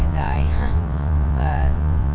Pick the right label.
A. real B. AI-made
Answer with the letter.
B